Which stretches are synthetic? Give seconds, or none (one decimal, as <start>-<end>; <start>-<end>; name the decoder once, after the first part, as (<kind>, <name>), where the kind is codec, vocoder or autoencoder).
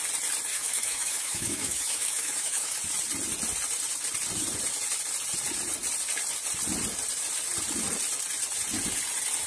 0.5-2.8 (autoencoder, DAC-VAE)